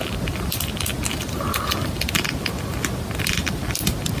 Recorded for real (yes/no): yes